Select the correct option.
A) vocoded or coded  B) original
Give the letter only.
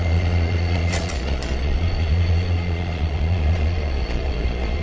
A